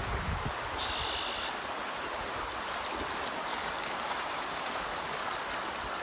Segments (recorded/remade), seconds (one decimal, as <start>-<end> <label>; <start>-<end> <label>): 0.0-3.5 recorded; 3.5-4.9 remade; 4.9-6.0 recorded